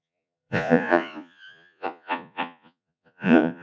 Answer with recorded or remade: remade